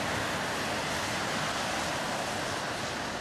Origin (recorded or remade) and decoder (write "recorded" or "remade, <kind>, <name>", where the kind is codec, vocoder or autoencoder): recorded